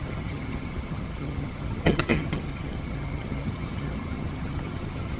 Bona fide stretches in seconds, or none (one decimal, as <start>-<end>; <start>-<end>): none

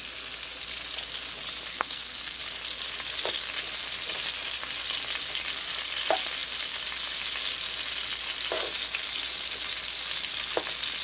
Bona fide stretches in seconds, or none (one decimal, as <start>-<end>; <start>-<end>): 0.0-1.7; 2.4-11.0

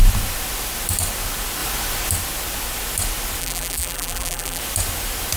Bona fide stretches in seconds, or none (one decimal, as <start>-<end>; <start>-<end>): 0.0-3.4; 4.6-5.4

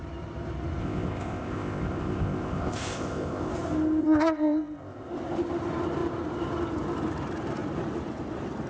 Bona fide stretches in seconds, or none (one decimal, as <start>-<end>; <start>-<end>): 0.0-0.8; 3.5-4.0; 5.1-8.7

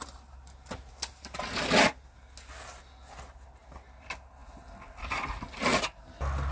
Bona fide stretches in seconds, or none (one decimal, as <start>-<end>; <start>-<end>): 0.0-6.5

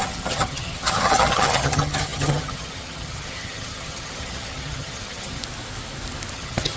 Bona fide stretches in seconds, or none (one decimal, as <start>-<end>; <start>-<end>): 5.4-6.3